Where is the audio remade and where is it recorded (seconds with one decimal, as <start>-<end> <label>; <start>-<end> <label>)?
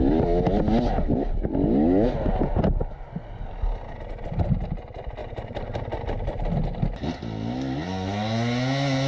0.0-5.2 recorded; 5.2-6.0 remade; 6.0-9.1 recorded